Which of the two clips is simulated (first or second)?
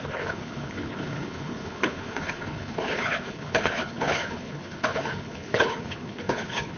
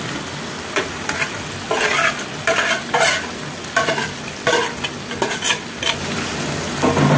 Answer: first